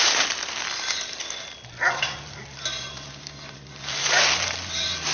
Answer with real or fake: real